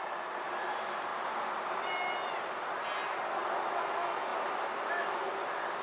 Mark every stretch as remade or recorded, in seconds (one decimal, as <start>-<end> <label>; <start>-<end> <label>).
0.0-5.8 recorded